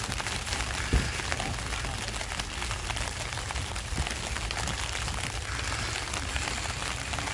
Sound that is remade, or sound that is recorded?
recorded